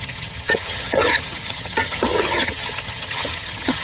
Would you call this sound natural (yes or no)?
no